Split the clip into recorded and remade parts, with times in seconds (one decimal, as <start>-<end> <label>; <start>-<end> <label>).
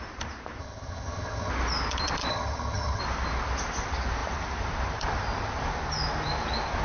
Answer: 0.0-0.6 recorded; 0.6-1.5 remade; 1.5-2.3 recorded; 2.3-3.0 remade; 3.0-6.8 recorded